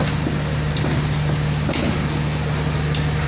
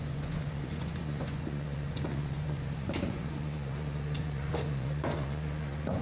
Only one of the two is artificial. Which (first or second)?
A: second